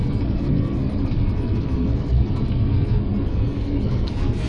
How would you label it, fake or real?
fake